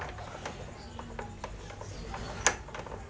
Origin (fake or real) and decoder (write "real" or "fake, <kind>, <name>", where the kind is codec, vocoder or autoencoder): real